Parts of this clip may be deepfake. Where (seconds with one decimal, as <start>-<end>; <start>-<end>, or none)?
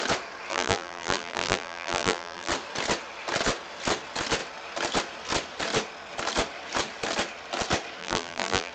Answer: 0.5-2.5; 8.0-8.7